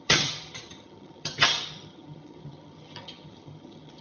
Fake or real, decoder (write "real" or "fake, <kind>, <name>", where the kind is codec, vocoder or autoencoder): fake, vocoder, HiFi-GAN